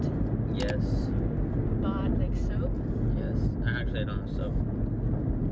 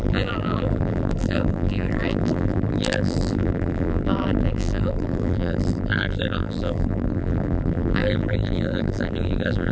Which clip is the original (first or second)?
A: first